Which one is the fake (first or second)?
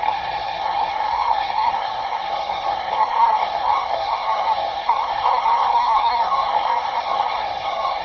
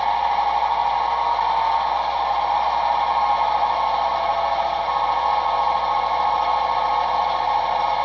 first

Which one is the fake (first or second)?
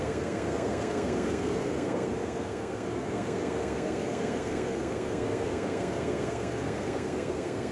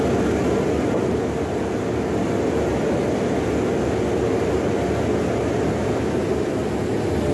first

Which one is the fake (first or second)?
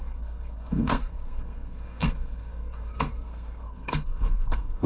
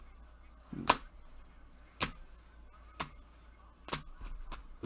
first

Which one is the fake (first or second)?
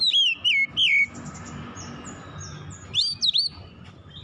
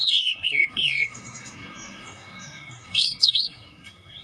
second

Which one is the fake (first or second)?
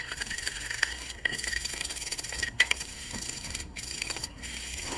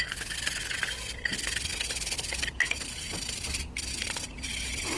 first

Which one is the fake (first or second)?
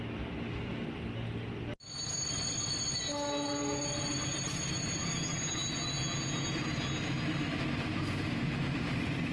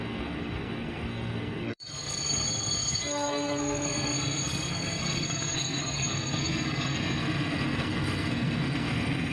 second